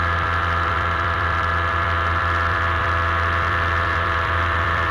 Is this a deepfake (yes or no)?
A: yes